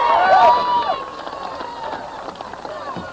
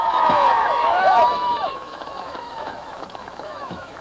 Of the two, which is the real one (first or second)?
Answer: first